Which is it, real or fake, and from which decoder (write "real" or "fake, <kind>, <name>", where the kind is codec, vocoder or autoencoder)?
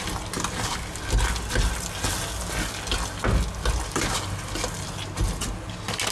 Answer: real